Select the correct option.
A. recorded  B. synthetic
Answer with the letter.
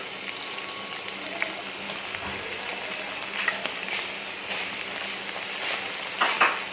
A